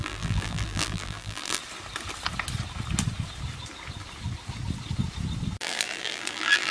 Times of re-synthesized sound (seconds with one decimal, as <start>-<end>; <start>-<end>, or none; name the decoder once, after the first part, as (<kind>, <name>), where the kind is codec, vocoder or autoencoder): 0.0-1.6 (vocoder, BigVGAN v2); 5.6-6.7